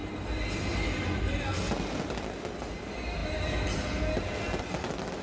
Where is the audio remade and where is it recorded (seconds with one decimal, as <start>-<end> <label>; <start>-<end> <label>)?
0.0-5.2 recorded